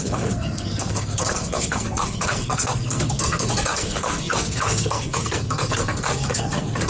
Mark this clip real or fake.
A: fake